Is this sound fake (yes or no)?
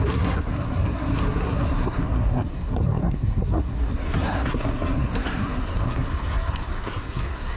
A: yes